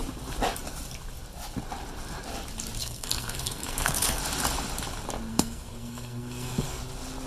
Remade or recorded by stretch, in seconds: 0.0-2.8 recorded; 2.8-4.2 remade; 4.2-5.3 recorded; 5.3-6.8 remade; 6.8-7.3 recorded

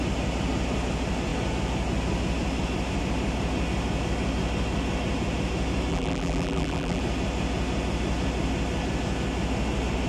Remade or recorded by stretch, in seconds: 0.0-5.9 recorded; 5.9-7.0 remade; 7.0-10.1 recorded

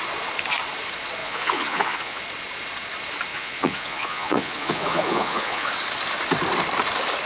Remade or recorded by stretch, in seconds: 0.0-1.2 recorded; 1.2-2.2 remade; 2.2-3.3 recorded; 3.3-5.7 remade; 5.7-7.3 recorded

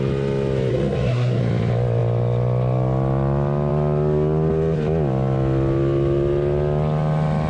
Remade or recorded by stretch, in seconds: 0.0-0.7 recorded; 0.7-1.4 remade; 1.4-7.5 recorded